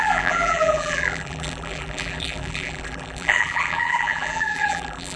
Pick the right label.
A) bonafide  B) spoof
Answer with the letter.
B